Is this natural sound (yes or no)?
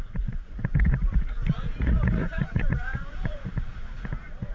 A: no